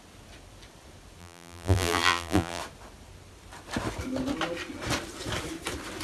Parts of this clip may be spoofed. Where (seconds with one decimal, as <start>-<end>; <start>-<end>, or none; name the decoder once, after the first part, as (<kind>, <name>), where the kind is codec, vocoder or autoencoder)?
1.2-2.6 (vocoder, BigVGAN v2)